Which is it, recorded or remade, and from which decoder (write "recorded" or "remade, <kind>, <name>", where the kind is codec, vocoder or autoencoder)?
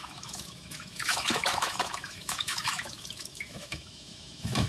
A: remade, autoencoder, DAC-VAE